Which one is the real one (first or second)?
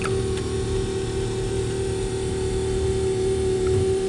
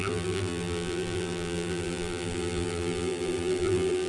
first